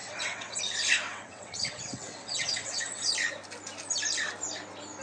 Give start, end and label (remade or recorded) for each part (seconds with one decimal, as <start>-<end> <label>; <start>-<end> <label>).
0.0-0.6 remade; 0.6-1.1 recorded; 1.1-3.1 remade; 3.1-5.0 recorded